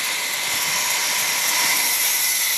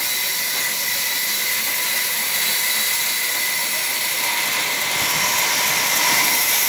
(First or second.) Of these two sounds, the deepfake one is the second